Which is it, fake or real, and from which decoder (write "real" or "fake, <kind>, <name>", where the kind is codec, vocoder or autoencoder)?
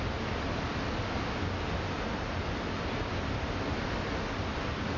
real